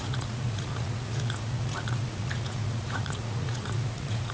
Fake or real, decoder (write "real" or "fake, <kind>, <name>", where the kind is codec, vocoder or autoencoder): fake, vocoder, Vocos